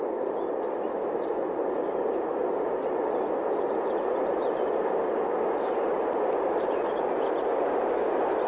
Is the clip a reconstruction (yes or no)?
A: no